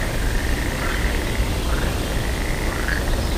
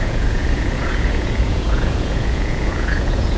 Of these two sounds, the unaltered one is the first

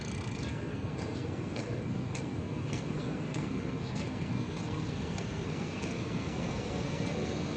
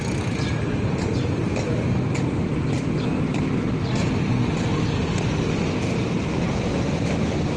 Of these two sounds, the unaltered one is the second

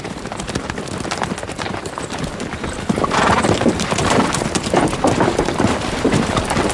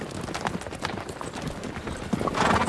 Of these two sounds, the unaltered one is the second